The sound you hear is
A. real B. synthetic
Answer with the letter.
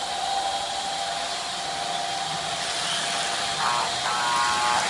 A